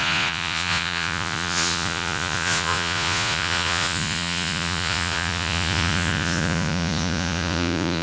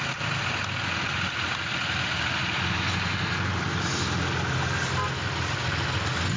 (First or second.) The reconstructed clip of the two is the first